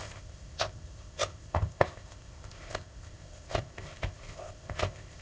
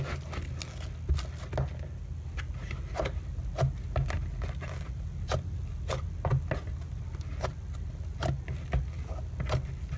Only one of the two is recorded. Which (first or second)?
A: second